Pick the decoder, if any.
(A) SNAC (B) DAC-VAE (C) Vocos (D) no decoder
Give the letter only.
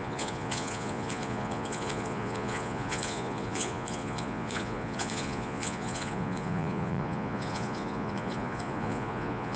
C